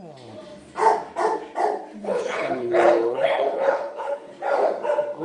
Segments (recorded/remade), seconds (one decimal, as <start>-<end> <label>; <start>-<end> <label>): 0.0-2.0 recorded; 2.0-4.3 remade; 4.3-5.2 recorded